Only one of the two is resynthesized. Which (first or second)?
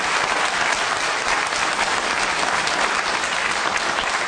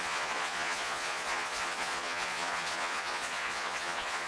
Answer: second